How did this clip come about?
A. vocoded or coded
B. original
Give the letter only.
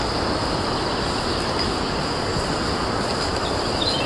B